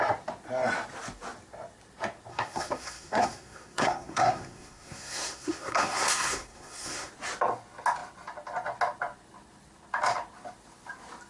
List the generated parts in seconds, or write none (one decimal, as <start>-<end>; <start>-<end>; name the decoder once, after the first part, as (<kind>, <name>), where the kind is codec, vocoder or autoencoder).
2.3-7.1 (codec, SNAC)

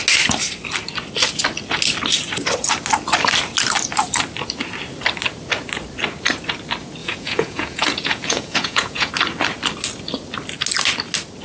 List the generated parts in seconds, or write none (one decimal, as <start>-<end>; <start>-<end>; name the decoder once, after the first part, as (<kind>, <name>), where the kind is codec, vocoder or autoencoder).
7.0-9.1 (vocoder, Vocos)